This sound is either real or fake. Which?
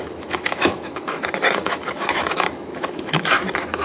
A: fake